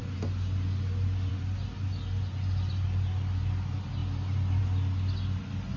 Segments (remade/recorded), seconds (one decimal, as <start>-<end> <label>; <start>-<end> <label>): 0.0-5.8 recorded